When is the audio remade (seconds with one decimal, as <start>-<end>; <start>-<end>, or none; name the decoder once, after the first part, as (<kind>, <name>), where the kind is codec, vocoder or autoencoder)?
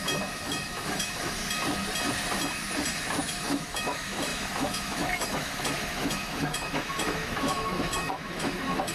0.0-1.4 (autoencoder, DAC-VAE); 3.2-8.9